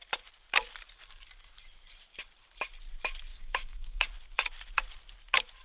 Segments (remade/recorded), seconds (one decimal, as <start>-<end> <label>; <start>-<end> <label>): 0.0-3.3 recorded; 3.3-4.1 remade; 4.1-5.6 recorded